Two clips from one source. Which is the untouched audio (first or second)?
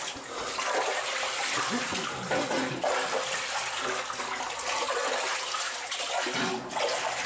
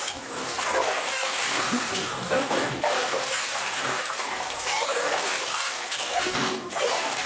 first